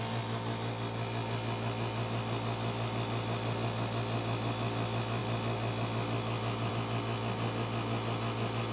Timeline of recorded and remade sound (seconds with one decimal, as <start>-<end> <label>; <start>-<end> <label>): 0.0-8.7 recorded